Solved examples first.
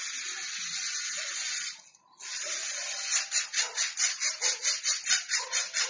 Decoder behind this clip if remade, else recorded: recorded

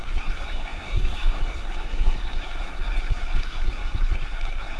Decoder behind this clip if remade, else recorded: remade, codec, SNAC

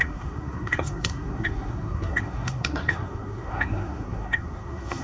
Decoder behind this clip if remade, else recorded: remade, codec, SNAC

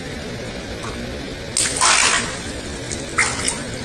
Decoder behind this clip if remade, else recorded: recorded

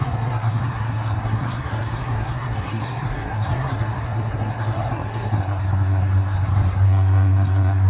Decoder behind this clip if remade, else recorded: remade, codec, SNAC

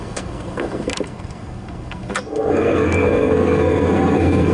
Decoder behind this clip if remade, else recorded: remade, codec, SNAC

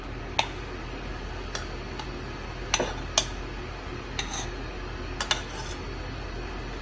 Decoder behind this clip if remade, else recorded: recorded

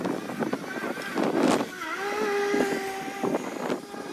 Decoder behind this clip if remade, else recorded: recorded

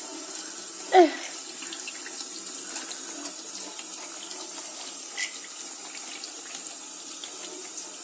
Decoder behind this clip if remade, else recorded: recorded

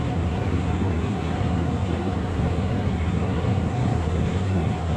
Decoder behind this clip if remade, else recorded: remade, codec, SNAC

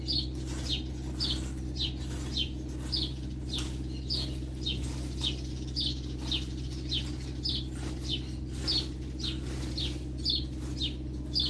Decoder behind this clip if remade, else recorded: recorded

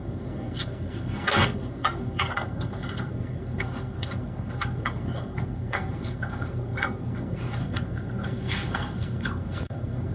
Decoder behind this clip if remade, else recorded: remade, codec, SNAC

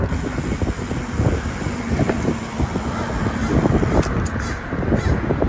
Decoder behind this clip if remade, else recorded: recorded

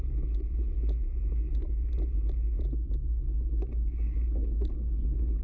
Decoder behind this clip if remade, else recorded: recorded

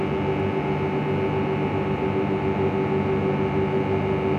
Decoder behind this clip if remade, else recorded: recorded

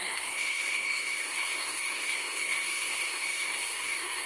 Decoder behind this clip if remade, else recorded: remade, codec, SNAC